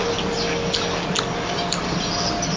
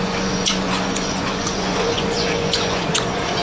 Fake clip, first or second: second